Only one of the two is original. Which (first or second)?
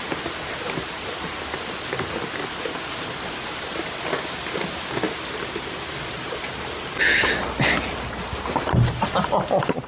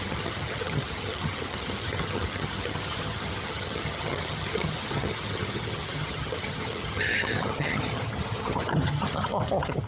first